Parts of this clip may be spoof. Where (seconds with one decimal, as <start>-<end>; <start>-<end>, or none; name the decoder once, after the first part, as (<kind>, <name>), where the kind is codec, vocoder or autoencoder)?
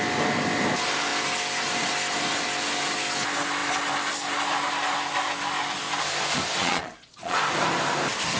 6.6-7.4 (vocoder, Vocos)